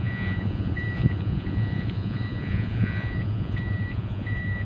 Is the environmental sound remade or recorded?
remade